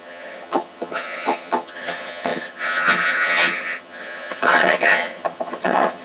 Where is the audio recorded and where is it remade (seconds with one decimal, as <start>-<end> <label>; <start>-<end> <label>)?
0.0-6.0 remade